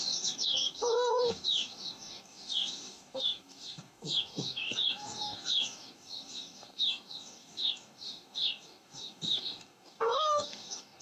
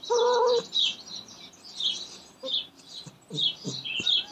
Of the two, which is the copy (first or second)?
first